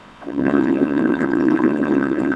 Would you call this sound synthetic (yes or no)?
yes